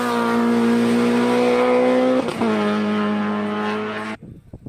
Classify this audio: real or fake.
real